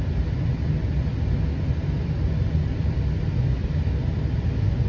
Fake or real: real